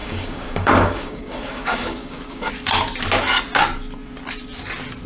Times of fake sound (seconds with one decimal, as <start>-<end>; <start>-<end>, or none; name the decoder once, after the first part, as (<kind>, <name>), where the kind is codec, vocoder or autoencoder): 0.0-2.5 (codec, DAC)